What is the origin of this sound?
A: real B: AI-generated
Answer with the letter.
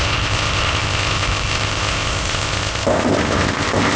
B